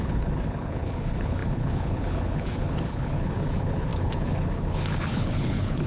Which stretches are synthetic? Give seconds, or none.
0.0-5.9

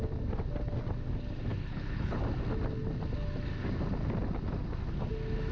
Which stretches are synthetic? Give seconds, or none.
1.5-2.2

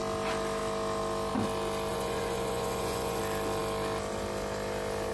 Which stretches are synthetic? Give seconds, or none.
1.9-3.2

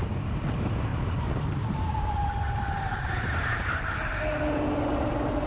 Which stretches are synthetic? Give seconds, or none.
0.9-4.2